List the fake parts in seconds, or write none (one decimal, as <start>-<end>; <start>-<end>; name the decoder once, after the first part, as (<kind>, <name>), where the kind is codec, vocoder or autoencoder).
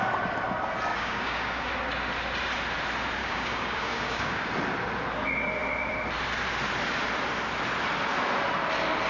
0.9-1.7 (codec, DAC); 3.2-4.5